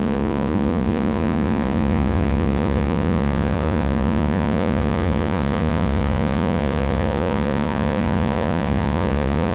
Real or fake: fake